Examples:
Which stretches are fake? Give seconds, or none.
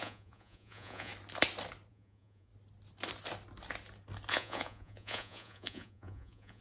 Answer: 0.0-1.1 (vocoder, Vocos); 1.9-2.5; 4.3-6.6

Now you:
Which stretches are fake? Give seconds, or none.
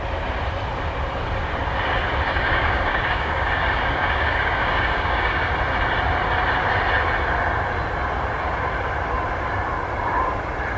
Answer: 2.3-5.5 (codec, DAC)